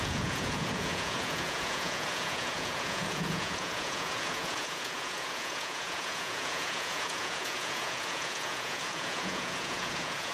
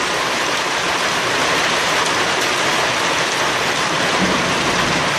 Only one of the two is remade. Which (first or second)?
first